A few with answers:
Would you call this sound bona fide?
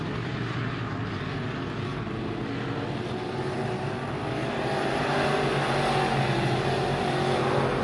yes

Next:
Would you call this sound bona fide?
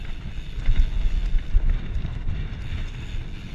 yes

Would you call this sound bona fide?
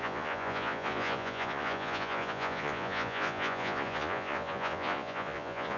no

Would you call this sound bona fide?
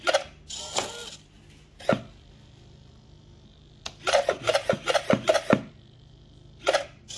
yes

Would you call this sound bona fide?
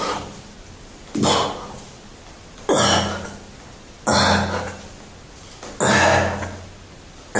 yes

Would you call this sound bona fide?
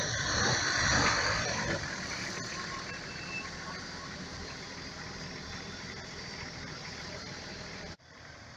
no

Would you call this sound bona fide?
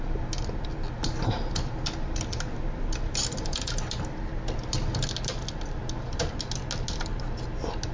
yes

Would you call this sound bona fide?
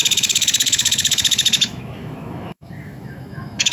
no